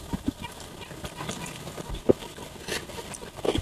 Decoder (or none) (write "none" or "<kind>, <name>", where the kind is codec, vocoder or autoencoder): none